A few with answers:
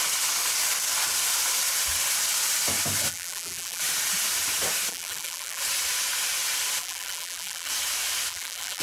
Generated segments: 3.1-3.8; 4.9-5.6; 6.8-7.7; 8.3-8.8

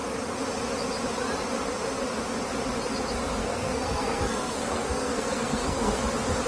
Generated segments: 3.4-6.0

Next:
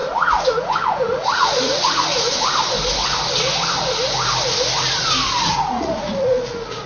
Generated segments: 0.0-2.1; 5.5-6.9

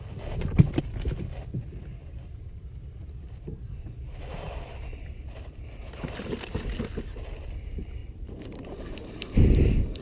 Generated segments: 2.0-5.3; 8.0-9.2

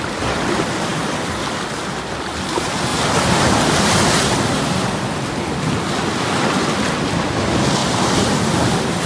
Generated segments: 0.9-1.8; 7.8-9.1

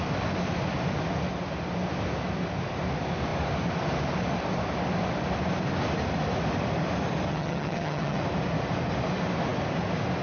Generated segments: 7.3-8.2

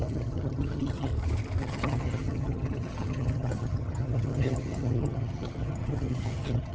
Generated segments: 0.0-1.1; 1.6-6.7

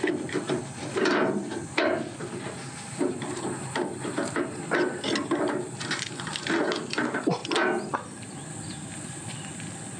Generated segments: none